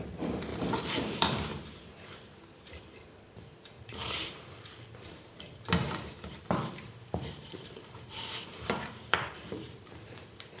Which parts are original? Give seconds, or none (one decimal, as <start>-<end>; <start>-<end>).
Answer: 0.5-1.0; 1.5-3.2